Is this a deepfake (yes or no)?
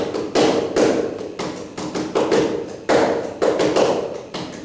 no